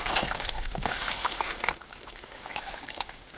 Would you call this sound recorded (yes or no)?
no